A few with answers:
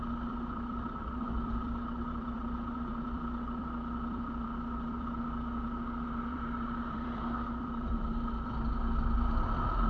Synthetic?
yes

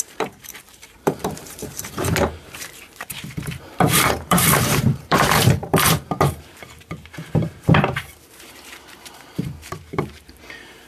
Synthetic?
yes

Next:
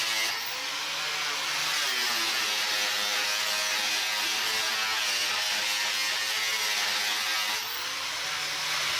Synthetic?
no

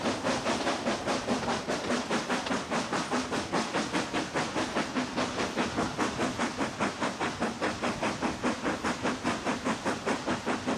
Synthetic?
no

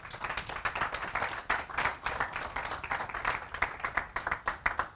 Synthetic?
no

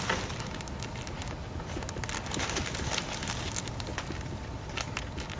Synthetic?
no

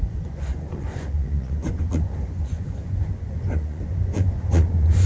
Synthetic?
yes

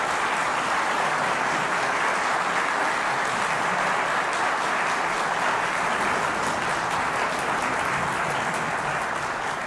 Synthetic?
no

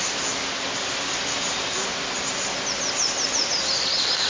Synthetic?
no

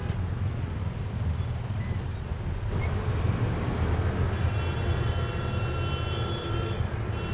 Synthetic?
no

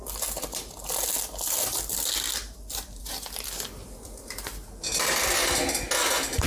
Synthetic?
no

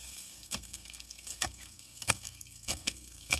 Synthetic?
yes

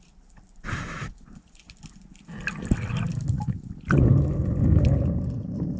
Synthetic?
no